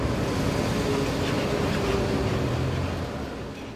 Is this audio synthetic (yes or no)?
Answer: no